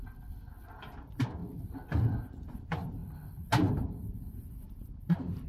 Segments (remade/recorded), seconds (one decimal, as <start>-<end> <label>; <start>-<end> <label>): 0.0-0.7 recorded; 0.7-1.4 remade; 1.4-2.2 recorded; 2.2-3.0 remade; 3.0-3.7 recorded; 3.7-5.5 remade